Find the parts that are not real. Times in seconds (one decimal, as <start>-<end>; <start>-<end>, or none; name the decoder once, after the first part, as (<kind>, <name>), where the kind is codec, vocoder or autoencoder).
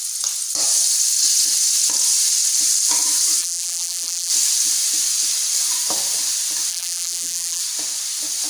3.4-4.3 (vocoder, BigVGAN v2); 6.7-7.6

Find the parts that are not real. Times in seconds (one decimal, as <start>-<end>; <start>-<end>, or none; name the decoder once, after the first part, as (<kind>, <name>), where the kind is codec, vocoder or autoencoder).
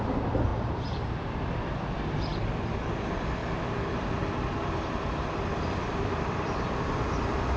0.5-1.4 (vocoder, BigVGAN v2); 2.3-2.9; 3.4-6.2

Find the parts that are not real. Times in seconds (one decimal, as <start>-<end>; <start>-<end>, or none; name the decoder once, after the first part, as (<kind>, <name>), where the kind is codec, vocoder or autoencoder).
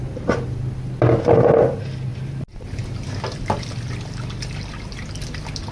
none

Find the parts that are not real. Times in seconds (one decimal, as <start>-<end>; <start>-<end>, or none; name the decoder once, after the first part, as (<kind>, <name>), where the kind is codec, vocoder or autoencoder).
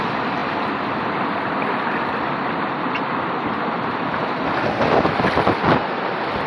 none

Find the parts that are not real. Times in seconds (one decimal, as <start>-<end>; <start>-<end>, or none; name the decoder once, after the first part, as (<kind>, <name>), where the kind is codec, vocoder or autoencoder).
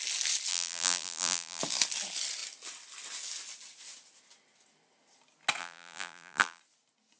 0.5-1.6 (vocoder, BigVGAN v2); 5.6-6.6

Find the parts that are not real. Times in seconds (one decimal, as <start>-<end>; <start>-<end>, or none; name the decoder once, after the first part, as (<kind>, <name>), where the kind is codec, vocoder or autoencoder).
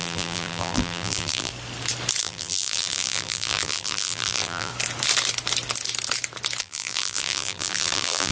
0.0-1.5 (vocoder, BigVGAN v2); 2.2-4.7; 6.6-8.3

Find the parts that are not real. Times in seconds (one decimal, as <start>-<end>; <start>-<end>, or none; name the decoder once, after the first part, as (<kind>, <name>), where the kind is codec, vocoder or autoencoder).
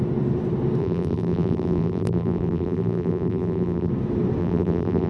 0.8-3.9 (vocoder, BigVGAN v2); 4.4-5.1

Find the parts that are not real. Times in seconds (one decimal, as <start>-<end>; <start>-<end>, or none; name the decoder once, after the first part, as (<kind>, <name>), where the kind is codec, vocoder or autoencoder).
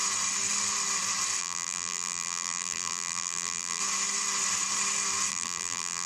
1.4-3.8 (vocoder, BigVGAN v2); 5.3-6.1